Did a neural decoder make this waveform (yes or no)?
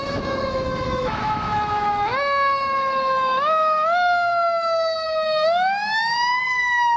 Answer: yes